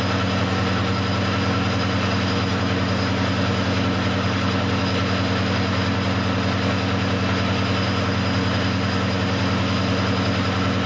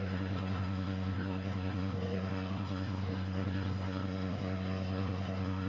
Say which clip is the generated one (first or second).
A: second